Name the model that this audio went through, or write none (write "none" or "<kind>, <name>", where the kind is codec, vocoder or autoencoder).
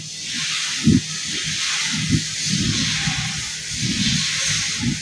none